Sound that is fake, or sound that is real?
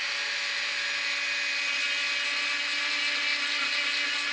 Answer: real